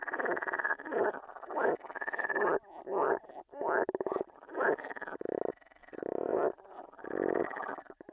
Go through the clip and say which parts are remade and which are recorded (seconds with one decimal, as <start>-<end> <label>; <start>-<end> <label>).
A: 0.0-8.1 recorded